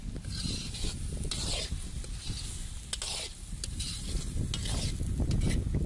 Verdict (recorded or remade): recorded